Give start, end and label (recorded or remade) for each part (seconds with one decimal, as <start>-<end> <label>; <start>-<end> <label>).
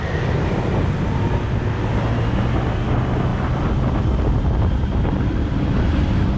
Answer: 0.0-6.4 recorded